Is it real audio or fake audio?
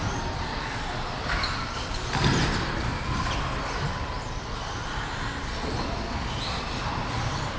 real